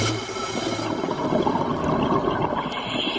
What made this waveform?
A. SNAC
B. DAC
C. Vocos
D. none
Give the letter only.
D